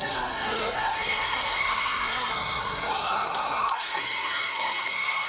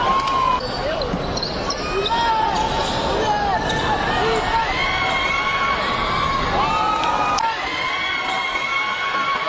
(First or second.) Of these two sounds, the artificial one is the first